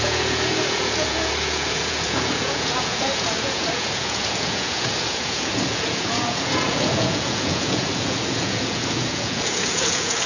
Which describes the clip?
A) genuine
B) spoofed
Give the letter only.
B